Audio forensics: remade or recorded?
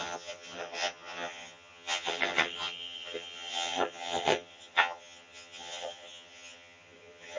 remade